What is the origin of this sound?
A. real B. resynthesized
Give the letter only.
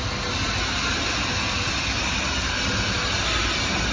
A